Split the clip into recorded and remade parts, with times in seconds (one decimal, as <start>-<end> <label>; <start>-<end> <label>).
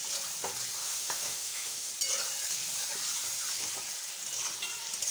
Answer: 0.0-0.8 recorded; 0.8-1.9 remade; 1.9-5.1 recorded